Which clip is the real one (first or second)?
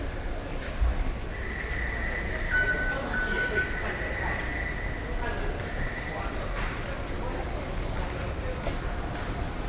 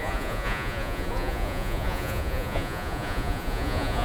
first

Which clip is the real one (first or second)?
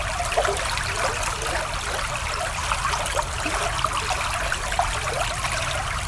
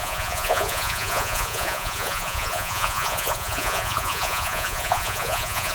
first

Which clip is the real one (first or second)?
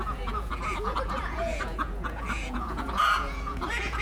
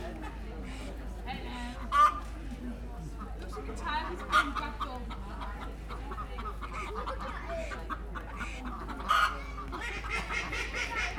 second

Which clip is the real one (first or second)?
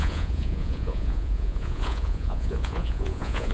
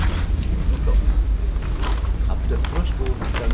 second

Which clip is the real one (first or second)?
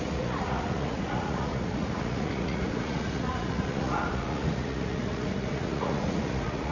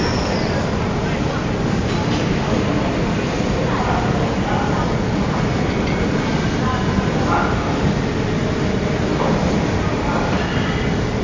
second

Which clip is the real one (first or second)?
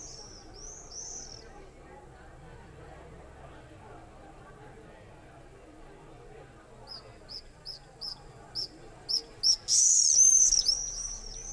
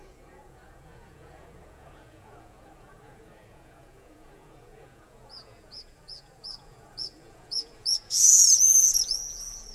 first